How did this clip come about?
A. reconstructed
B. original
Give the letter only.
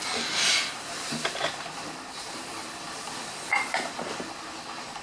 B